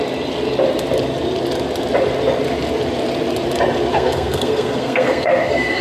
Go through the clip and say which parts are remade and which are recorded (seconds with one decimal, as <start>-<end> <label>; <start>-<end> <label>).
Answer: 0.0-3.9 recorded; 3.9-5.8 remade

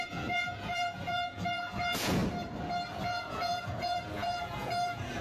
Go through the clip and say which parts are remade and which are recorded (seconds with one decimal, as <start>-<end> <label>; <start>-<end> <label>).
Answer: 0.0-2.2 remade; 2.2-2.9 recorded; 2.9-5.2 remade